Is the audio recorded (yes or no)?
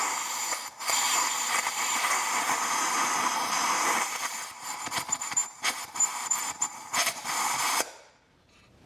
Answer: no